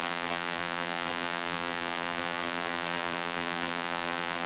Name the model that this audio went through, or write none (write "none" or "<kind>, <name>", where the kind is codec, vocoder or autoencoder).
vocoder, BigVGAN v2